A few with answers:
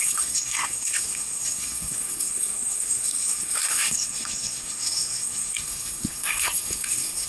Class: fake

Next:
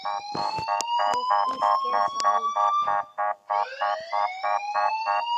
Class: real